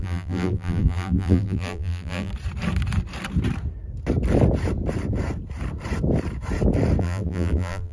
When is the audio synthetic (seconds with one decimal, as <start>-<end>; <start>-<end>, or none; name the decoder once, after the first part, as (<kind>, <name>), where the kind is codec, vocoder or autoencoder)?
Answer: 0.0-2.3 (vocoder, BigVGAN v2); 7.0-7.9